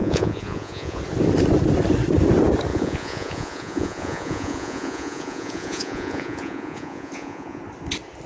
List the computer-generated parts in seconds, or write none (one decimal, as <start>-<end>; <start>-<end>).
0.0-1.0; 2.7-7.6